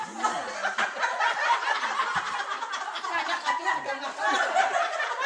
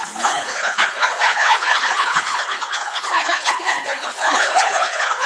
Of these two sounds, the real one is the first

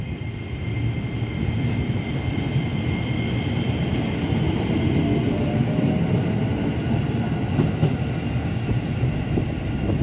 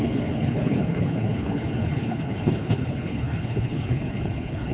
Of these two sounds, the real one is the first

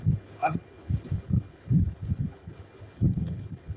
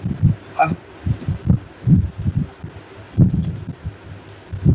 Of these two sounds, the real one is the second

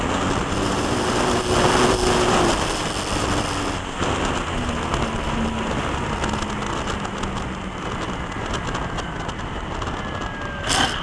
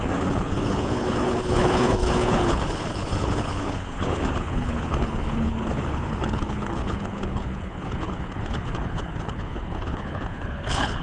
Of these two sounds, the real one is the first